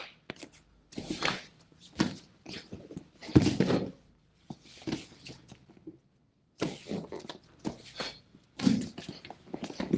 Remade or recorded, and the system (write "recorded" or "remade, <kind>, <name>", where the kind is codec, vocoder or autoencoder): recorded